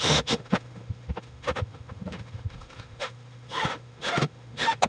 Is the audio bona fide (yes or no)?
no